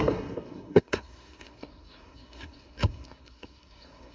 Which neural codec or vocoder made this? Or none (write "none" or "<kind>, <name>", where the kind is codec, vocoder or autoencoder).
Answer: codec, SNAC